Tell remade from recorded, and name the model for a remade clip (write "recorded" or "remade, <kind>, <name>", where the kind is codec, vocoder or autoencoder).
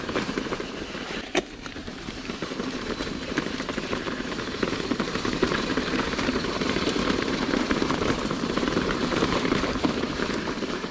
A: remade, vocoder, BigVGAN v2